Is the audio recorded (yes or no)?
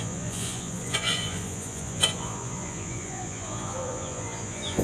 no